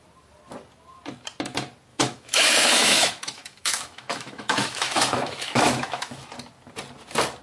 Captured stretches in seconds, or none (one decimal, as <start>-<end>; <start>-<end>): 0.0-1.9; 6.3-7.4